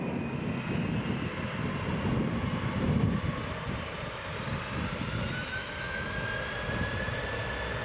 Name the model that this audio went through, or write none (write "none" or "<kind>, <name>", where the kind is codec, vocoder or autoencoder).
none